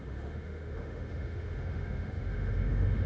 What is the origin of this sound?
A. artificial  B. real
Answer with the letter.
A